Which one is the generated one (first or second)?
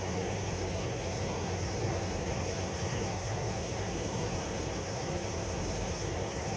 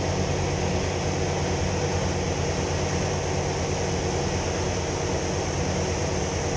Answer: first